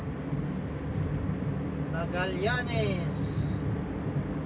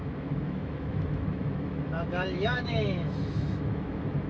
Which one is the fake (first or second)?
second